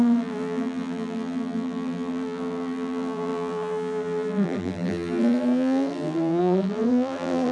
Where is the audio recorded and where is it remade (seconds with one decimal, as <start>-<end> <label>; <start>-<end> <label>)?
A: 0.0-7.5 remade